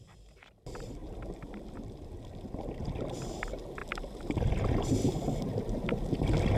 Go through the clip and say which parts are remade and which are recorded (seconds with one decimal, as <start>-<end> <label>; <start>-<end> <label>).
0.0-1.0 recorded; 1.0-1.7 remade; 1.7-6.6 recorded